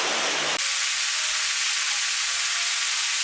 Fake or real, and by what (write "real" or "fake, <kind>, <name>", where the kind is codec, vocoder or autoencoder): real